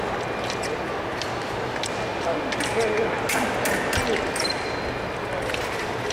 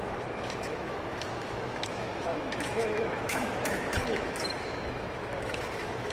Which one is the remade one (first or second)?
second